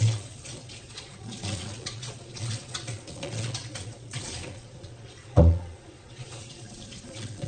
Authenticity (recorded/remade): remade